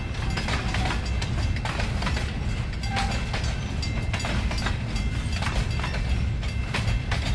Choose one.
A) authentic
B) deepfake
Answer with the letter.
A